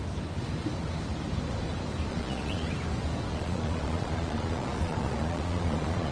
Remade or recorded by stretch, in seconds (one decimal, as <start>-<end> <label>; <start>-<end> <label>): 0.0-2.1 recorded; 2.1-2.7 remade; 2.7-3.3 recorded; 3.3-6.1 remade

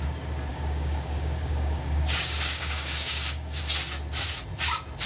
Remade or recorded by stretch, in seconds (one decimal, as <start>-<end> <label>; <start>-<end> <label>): 0.0-0.5 recorded; 0.5-3.6 remade; 3.6-5.1 recorded

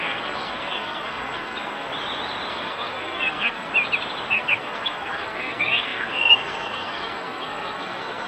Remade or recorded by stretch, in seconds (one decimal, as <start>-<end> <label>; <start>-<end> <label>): 0.0-1.9 remade; 1.9-2.5 recorded; 2.5-3.7 remade; 3.7-4.3 recorded; 4.3-8.3 remade

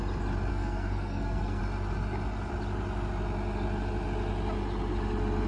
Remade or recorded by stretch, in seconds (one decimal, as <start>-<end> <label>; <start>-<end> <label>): 0.0-0.5 recorded; 0.5-1.6 remade; 1.6-5.5 recorded

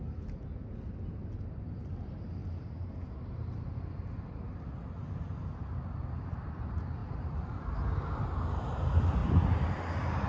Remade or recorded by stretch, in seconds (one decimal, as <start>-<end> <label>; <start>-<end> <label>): 0.0-2.4 recorded; 2.4-3.7 remade; 3.7-7.0 recorded; 7.0-7.7 remade; 7.7-10.3 recorded

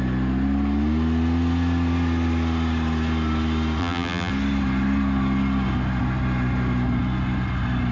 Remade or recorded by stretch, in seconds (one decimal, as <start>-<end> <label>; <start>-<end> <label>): 0.0-3.8 recorded; 3.8-4.3 remade; 4.3-7.9 recorded

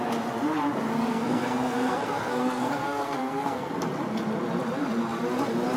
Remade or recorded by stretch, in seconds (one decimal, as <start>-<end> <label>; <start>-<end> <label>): 0.0-1.1 recorded; 1.1-3.7 remade; 3.7-5.8 recorded

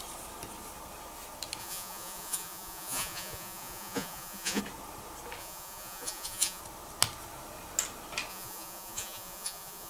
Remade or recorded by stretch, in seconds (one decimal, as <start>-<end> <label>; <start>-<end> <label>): 0.0-1.6 recorded; 1.6-4.6 remade; 4.6-5.4 recorded; 5.4-6.6 remade; 6.6-8.3 recorded; 8.3-9.9 remade